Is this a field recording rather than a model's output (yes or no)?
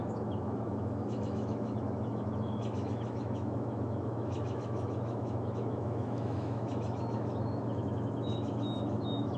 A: no